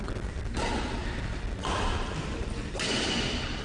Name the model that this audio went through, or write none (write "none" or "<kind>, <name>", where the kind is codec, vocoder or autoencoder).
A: none